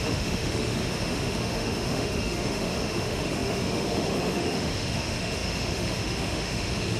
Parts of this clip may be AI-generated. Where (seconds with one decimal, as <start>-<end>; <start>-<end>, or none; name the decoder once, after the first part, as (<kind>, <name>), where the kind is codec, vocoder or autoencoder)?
0.0-7.0 (autoencoder, DAC-VAE)